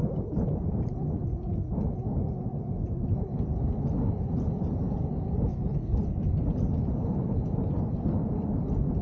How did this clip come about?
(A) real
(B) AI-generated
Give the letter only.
A